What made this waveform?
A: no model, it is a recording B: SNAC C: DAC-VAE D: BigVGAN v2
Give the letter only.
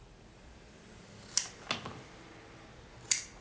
A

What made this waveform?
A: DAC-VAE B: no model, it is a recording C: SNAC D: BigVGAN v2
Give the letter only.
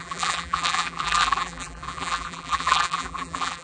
D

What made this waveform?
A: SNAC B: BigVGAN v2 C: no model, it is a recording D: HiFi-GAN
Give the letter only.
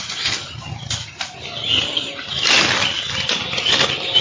C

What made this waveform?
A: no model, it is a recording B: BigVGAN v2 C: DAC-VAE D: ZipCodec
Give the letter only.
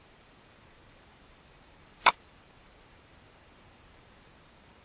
B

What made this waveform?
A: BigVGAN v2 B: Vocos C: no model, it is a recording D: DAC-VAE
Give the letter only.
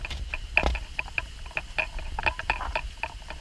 C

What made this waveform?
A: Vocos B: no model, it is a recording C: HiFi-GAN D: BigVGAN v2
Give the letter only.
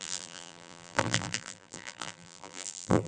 D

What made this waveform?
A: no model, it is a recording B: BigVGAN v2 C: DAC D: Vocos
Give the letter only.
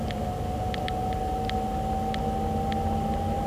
A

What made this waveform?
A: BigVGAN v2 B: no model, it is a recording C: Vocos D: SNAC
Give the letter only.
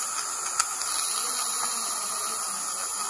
B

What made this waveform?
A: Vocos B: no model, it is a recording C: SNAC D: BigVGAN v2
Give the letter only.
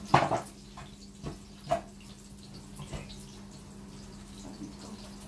B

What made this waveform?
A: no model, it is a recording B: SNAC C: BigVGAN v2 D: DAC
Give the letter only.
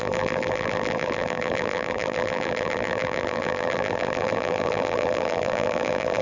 C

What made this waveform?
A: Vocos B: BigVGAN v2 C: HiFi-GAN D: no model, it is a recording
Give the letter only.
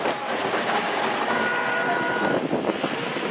D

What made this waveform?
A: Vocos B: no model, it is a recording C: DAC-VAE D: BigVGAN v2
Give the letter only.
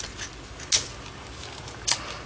B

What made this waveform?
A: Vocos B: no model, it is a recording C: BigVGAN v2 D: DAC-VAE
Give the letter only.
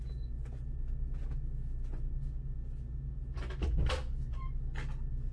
B